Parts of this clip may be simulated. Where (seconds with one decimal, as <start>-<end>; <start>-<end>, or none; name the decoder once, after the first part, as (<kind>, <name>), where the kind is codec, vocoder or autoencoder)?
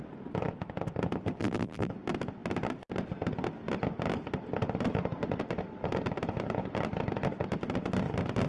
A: 1.4-1.9 (vocoder, BigVGAN v2)